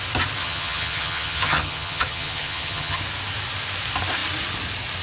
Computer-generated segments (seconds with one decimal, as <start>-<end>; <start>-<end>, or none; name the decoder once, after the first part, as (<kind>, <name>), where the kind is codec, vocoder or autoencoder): 0.4-3.0 (vocoder, HiFi-GAN)